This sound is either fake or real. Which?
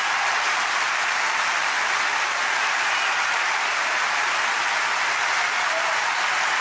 real